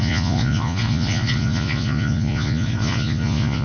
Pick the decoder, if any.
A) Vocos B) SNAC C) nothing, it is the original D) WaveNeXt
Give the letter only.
A